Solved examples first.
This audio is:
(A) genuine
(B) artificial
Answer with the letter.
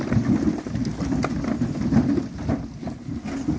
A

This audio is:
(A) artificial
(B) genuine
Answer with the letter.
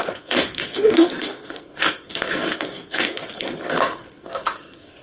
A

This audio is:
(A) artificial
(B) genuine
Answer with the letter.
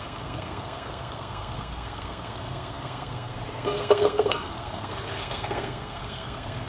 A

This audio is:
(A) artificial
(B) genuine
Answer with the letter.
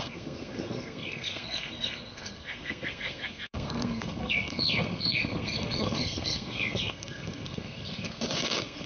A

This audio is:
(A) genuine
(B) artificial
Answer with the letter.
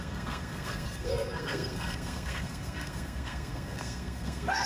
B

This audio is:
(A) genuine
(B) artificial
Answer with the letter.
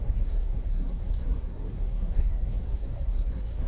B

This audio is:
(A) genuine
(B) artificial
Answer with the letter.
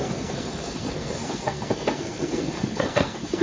B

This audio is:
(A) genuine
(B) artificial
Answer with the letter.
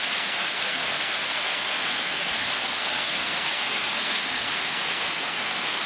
B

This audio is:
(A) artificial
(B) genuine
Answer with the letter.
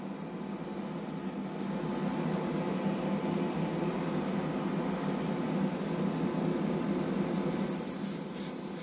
B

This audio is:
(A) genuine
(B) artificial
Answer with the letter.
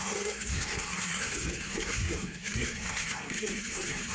B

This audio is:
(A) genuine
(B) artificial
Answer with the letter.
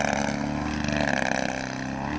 A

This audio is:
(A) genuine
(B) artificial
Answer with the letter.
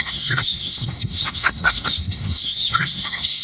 B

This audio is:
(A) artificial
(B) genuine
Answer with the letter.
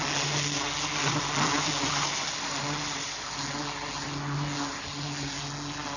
B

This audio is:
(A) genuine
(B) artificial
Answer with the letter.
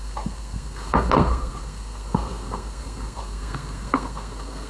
B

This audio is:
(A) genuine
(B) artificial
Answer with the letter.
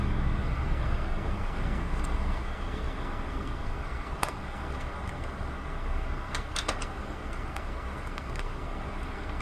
B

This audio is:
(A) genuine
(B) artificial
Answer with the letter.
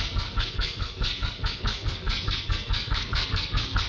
B